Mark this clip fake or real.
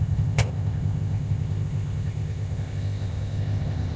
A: fake